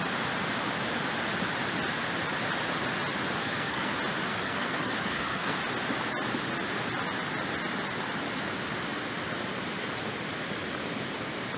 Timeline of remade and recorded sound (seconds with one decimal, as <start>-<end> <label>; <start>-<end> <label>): 0.0-3.4 recorded; 3.4-3.9 remade; 3.9-4.3 recorded; 4.3-5.6 remade; 5.6-11.6 recorded